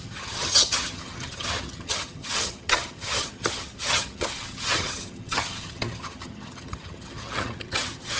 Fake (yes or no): yes